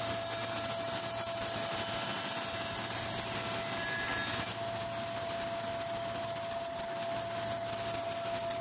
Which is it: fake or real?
real